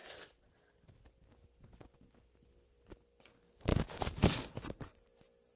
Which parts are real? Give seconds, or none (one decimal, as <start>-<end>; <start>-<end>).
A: 0.0-5.6